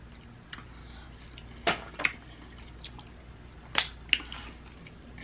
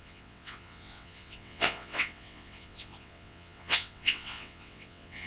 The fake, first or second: second